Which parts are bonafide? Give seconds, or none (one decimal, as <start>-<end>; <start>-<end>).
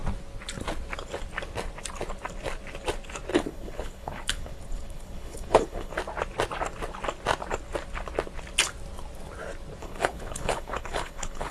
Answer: 0.0-3.3; 6.0-9.8